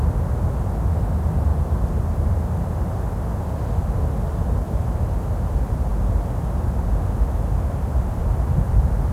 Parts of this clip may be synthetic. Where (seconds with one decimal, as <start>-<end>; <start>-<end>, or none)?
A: 1.5-2.8; 8.2-9.1